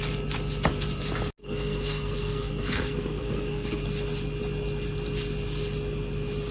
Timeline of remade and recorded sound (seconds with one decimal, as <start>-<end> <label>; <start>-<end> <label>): 0.0-1.4 recorded; 1.4-3.8 remade; 3.8-6.5 recorded